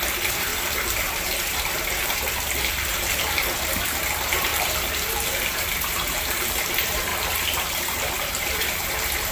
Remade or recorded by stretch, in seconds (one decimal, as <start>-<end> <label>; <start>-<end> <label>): 0.0-9.3 remade